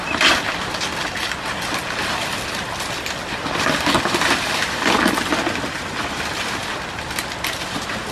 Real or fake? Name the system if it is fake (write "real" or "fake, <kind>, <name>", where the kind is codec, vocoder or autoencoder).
real